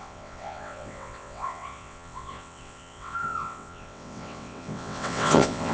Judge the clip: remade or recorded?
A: remade